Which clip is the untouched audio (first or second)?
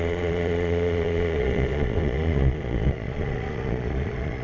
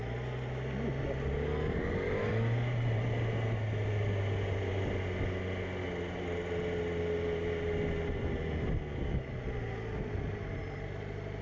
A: second